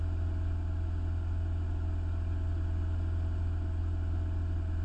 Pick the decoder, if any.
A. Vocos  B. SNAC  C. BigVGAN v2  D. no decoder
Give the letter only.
D